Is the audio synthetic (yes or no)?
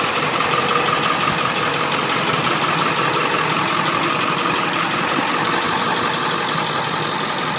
no